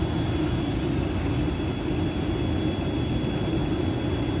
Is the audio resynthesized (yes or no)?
no